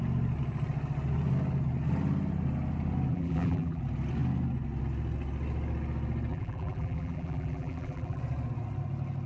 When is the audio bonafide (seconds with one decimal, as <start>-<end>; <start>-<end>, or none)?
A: 0.0-3.1; 3.8-6.3; 8.2-9.3